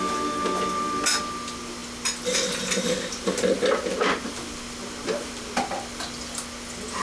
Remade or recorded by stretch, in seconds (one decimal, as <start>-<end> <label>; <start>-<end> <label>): 0.0-7.0 recorded